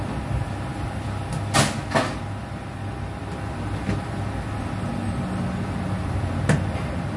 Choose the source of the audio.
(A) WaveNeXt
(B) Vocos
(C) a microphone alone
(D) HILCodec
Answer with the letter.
C